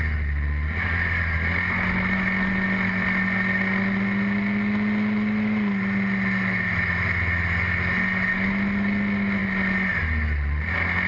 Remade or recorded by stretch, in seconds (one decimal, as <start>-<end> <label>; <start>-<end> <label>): 0.0-11.1 recorded